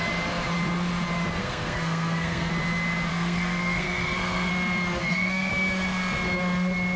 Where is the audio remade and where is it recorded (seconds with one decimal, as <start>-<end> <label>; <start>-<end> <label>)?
0.0-1.4 recorded; 1.4-2.5 remade; 2.5-3.1 recorded; 3.1-4.5 remade; 4.5-5.0 recorded; 5.0-5.5 remade; 5.5-7.0 recorded